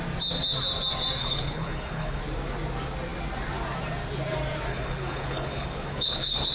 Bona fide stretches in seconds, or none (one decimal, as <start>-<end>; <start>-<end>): 0.0-1.2; 2.2-4.7